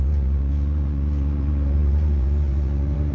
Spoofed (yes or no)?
yes